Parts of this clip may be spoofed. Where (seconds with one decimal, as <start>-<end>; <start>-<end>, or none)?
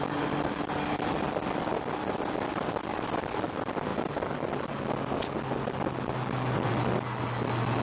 none